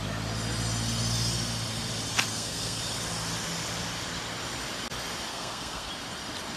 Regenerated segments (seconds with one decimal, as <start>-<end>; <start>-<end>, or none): 2.3-2.8; 5.3-5.9